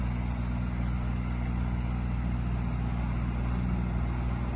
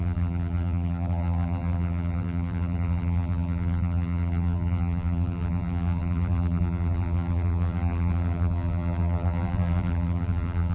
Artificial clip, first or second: second